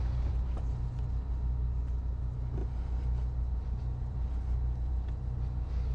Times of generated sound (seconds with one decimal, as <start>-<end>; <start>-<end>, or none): none